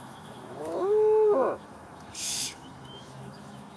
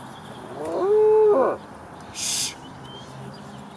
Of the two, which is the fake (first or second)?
first